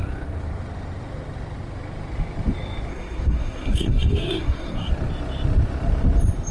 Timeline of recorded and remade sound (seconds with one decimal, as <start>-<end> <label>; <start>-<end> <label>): 0.0-2.9 recorded; 2.9-4.9 remade; 4.9-6.5 recorded